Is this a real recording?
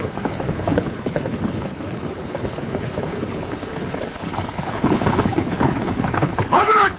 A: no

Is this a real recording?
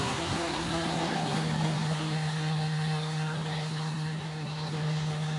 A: no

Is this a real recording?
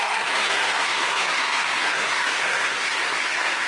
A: no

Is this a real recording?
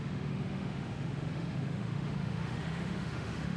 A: no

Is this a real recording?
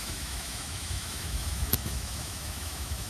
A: no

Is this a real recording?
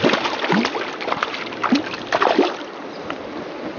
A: yes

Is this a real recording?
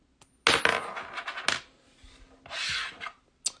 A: yes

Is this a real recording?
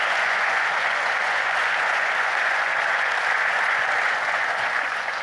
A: no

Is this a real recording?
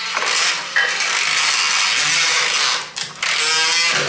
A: yes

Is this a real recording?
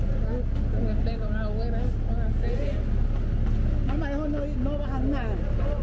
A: yes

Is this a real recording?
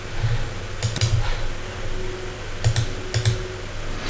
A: yes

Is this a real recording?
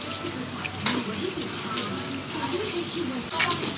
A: yes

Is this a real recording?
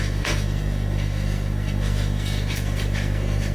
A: no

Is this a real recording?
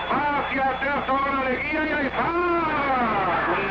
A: yes